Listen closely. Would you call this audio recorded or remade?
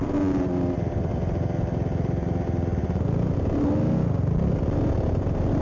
recorded